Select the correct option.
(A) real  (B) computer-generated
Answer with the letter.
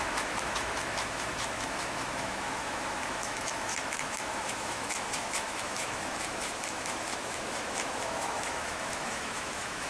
B